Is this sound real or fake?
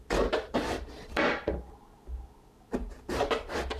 real